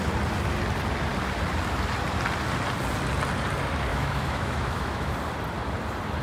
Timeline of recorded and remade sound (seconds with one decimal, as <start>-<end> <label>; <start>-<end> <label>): 0.0-3.9 recorded; 3.9-5.1 remade; 5.1-6.2 recorded